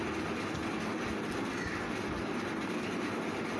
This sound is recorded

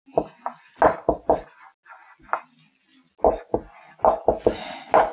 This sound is recorded